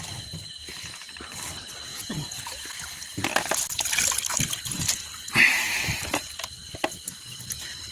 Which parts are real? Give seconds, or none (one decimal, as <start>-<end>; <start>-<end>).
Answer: 0.0-1.9; 2.8-7.9